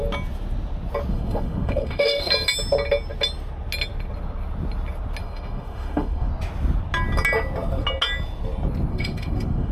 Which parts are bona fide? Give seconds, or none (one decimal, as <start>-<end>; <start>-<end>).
0.0-1.1; 2.3-5.2; 6.3-8.9